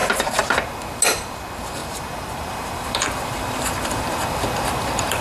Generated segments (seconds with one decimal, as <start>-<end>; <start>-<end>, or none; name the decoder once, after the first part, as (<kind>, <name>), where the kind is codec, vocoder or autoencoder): 1.8-5.2 (vocoder, BigVGAN v2)